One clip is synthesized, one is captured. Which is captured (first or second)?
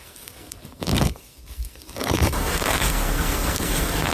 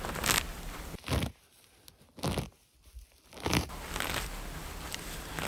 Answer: second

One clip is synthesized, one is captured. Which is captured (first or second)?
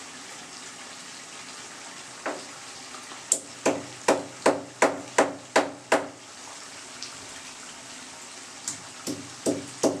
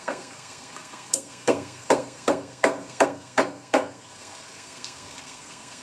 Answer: first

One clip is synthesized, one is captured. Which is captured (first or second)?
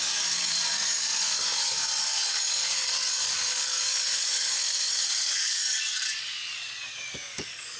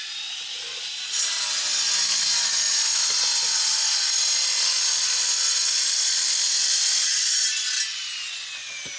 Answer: second